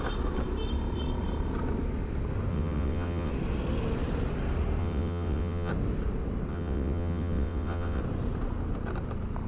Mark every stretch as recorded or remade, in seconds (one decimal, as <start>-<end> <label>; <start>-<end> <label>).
0.0-2.5 recorded; 2.5-3.3 remade; 3.3-4.8 recorded; 4.8-5.7 remade; 5.7-6.5 recorded; 6.5-8.0 remade; 8.0-9.5 recorded